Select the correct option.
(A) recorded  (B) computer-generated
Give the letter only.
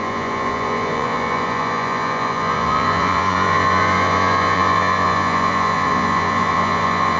B